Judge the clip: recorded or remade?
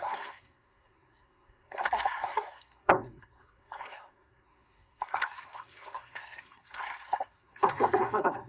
remade